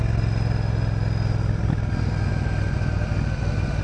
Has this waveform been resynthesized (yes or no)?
no